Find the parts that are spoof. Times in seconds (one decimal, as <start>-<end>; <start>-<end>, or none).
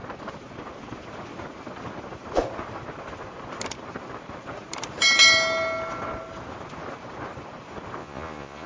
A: 8.0-8.7